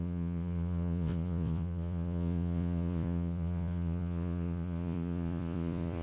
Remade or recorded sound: remade